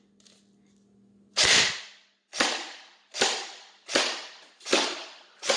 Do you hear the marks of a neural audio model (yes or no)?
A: no